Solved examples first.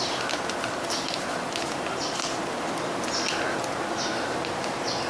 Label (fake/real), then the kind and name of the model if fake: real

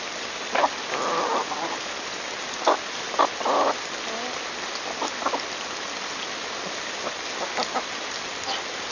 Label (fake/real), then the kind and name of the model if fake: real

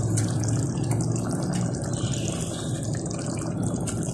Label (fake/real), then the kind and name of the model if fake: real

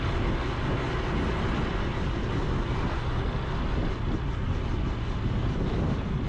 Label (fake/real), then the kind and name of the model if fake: real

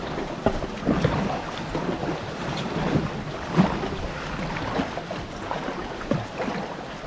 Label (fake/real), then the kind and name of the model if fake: real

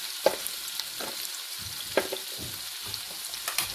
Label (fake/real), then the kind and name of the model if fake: real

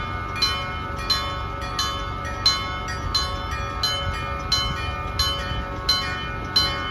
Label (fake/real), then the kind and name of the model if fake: real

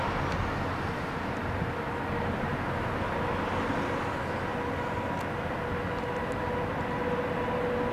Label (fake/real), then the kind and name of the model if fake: real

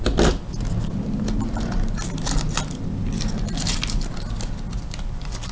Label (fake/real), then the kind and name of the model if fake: real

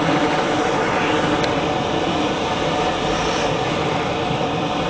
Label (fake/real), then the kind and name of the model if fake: fake, vocoder, BigVGAN v2